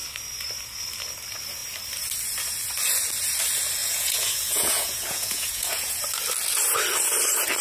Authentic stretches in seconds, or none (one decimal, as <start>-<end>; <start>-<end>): 0.0-3.8; 6.0-7.6